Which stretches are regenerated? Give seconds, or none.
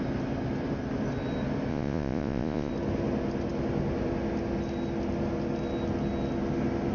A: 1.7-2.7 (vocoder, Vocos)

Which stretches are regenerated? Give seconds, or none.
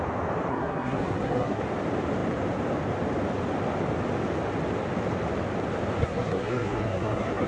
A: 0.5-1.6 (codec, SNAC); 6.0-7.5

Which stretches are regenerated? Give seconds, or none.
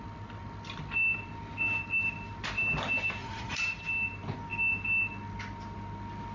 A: 3.2-3.8 (vocoder, Vocos)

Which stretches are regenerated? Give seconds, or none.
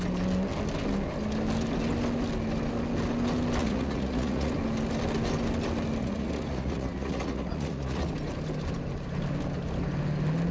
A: 3.6-4.5 (vocoder, Vocos); 6.0-8.1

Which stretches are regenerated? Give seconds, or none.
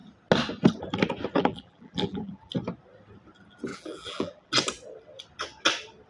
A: 1.4-2.5 (vocoder, BigVGAN v2); 3.7-4.5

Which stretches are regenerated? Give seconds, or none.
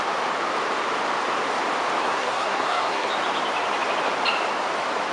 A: 2.0-3.1 (codec, SNAC)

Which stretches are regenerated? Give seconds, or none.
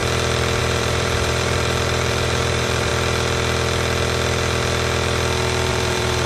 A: 0.6-2.9 (vocoder, BigVGAN v2); 5.7-6.3